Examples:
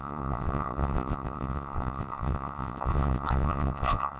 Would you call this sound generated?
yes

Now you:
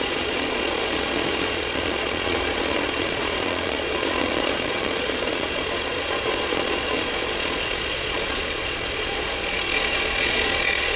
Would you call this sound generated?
yes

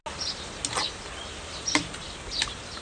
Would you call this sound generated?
no